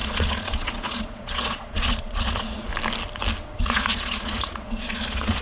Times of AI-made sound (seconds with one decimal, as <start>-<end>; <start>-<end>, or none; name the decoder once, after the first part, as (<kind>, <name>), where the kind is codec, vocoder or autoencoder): 0.0-2.7 (vocoder, Vocos); 3.6-5.4